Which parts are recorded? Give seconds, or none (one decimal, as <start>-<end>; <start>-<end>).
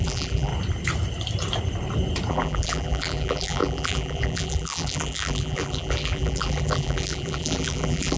0.5-2.3